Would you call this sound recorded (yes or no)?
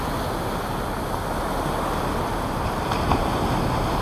yes